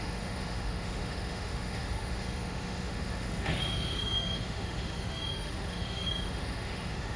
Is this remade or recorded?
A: remade